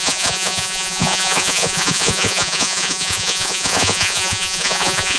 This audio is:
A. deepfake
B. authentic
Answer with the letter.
A